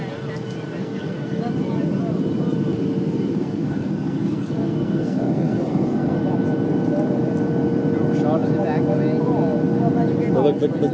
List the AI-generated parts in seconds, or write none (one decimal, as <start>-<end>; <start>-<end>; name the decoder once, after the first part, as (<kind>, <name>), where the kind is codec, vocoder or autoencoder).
0.8-1.4 (codec, SNAC); 3.4-6.2